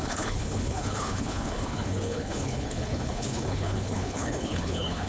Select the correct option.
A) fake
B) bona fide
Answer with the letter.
A